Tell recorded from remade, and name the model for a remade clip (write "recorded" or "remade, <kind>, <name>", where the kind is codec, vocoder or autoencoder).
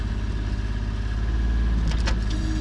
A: recorded